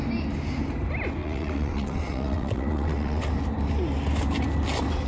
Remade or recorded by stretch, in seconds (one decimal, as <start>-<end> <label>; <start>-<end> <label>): 0.0-1.2 recorded; 1.2-3.3 remade; 3.3-5.1 recorded